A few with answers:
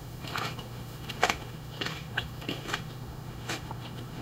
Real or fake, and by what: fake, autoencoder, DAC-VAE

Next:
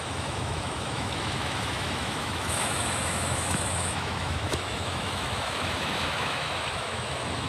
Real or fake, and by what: fake, autoencoder, DAC-VAE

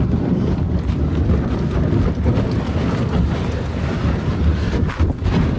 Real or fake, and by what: real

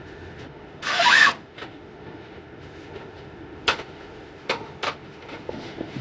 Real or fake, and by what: fake, autoencoder, DAC-VAE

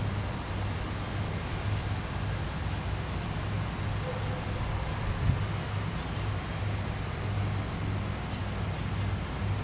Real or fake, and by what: real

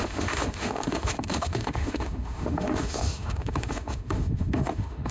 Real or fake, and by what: fake, autoencoder, DAC-VAE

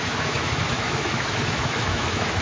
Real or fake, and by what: fake, autoencoder, DAC-VAE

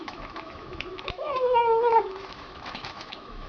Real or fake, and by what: fake, autoencoder, DAC-VAE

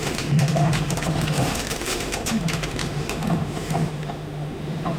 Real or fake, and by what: fake, autoencoder, DAC-VAE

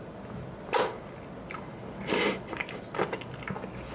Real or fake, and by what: real